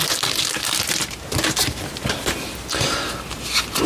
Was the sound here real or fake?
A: real